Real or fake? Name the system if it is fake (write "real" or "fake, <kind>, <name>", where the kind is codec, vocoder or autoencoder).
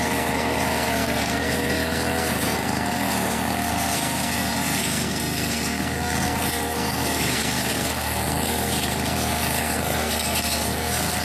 fake, codec, SNAC